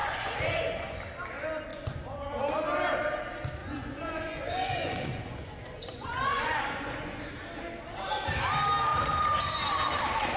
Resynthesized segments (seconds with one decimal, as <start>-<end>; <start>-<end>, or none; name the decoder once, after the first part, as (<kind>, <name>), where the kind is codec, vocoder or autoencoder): 0.0-1.0 (vocoder, Vocos); 1.7-2.4; 3.6-7.2